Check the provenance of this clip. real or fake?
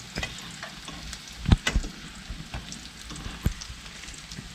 real